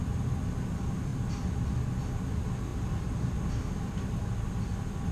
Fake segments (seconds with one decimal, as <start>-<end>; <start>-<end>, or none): 1.1-2.1